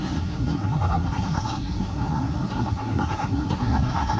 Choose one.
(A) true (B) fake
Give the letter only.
B